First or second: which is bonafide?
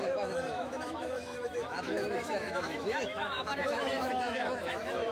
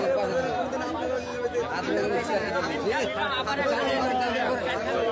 second